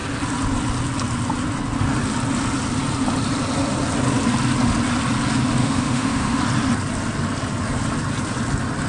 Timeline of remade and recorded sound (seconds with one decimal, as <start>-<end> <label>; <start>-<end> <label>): 0.0-5.6 recorded; 5.6-6.4 remade; 6.4-8.9 recorded